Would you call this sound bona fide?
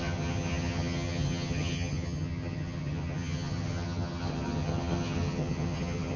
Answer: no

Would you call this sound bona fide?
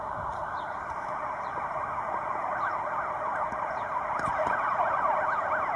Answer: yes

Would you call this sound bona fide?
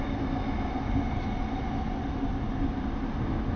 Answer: yes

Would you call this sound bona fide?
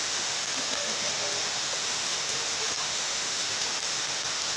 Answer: no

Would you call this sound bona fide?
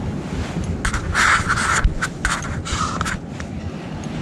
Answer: yes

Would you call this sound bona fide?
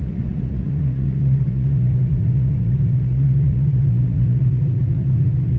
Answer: no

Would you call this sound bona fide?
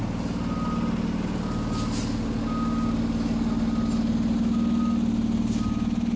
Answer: yes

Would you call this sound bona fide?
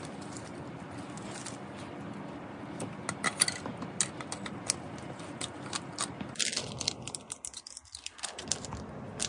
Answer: yes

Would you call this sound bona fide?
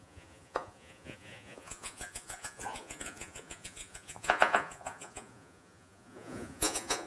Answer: no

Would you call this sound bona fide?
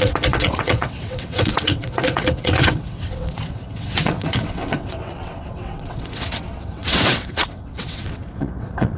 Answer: no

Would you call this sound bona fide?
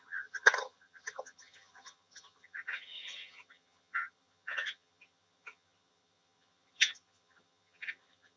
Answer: no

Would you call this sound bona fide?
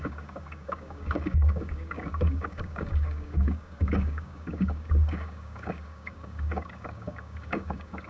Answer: no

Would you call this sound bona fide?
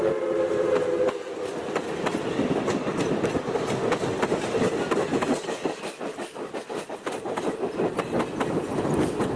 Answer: yes